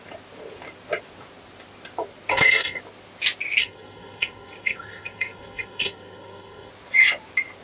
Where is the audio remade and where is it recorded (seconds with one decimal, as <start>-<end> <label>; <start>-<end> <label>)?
0.0-2.3 recorded; 2.3-2.8 remade; 2.8-3.6 recorded; 3.6-6.7 remade; 6.7-7.6 recorded